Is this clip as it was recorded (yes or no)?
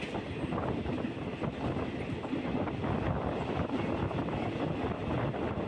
yes